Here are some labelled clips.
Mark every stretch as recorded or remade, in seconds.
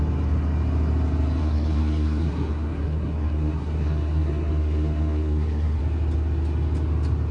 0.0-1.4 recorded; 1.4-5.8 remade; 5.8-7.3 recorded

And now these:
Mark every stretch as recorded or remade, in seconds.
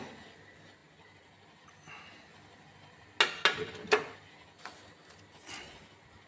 0.0-6.3 recorded